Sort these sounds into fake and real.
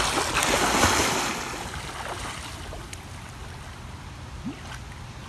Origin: real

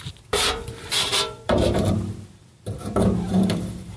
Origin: fake